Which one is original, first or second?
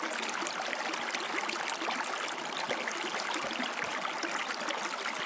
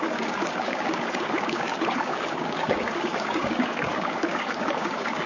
first